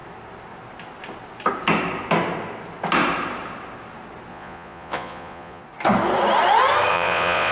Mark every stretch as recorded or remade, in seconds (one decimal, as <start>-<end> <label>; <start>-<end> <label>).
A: 0.0-4.3 recorded; 4.3-5.6 remade; 5.6-6.9 recorded; 6.9-7.5 remade